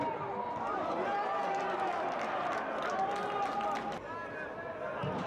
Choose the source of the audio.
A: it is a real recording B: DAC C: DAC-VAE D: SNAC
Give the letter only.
A